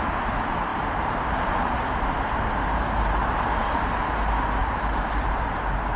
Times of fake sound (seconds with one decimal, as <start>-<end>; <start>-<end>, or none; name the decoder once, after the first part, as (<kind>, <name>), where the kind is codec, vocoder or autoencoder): 0.7-1.7 (vocoder, BigVGAN v2); 4.6-6.0